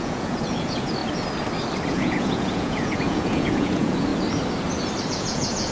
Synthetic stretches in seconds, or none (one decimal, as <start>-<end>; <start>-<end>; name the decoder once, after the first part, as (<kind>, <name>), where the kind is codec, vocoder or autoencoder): 0.0-1.0 (vocoder, Vocos); 1.9-4.1; 5.1-5.7